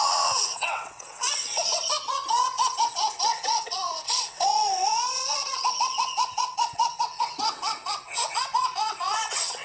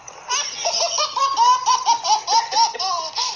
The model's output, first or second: first